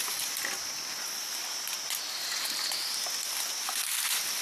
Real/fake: real